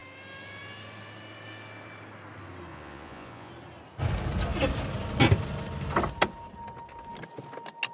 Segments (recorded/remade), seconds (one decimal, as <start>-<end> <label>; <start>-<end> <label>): 0.0-2.7 recorded; 2.7-3.5 remade; 3.5-7.9 recorded